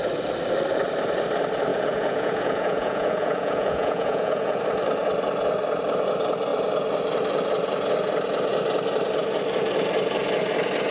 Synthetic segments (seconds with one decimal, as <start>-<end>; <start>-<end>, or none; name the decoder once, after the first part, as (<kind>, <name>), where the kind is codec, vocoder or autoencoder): 1.7-4.6 (vocoder, Vocos)